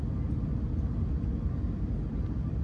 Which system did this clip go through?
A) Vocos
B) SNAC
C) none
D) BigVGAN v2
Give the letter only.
C